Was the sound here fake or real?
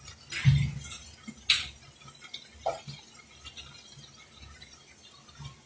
real